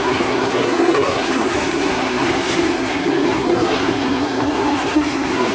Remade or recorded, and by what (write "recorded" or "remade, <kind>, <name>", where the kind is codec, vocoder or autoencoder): remade, codec, SNAC